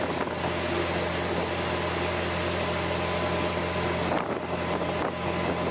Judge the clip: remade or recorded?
recorded